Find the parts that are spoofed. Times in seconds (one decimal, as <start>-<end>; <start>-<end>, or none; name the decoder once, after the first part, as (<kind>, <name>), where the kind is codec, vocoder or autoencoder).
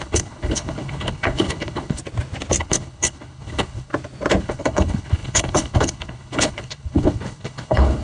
0.0-2.0 (codec, HILCodec); 2.6-3.9; 4.4-8.0